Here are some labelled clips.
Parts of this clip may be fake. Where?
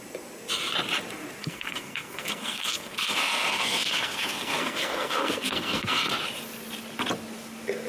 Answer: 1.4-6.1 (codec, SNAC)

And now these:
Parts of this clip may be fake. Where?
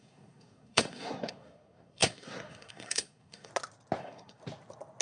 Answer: 0.0-3.5 (codec, SNAC); 4.0-4.4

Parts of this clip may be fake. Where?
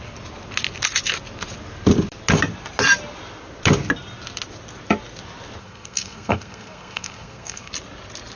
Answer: 5.6-7.7 (codec, SNAC)